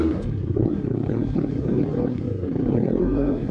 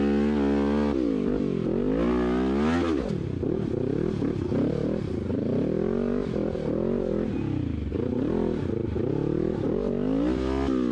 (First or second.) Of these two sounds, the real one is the second